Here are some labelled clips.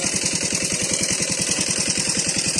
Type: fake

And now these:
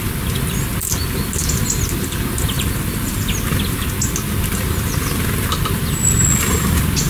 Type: real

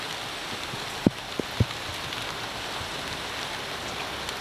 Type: real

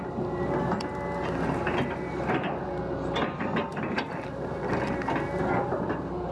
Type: real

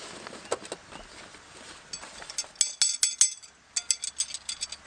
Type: real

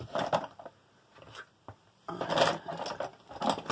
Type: real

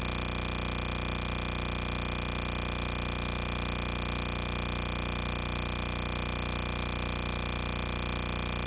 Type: real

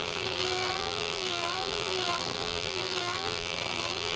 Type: fake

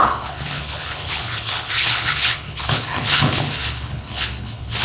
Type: fake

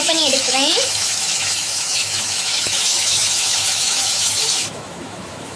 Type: fake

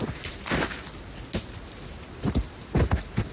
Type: real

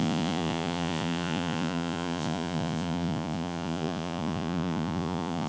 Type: fake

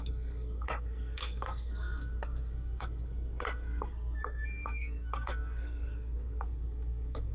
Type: fake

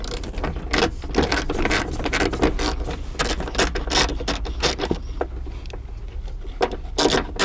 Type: real